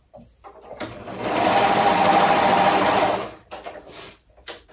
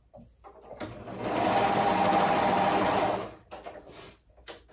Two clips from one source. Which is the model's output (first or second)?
first